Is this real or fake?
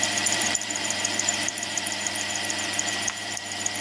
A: fake